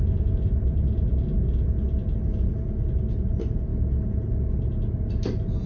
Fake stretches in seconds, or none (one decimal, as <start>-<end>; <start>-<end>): none